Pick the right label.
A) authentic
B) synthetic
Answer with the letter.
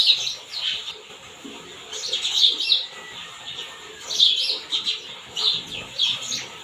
A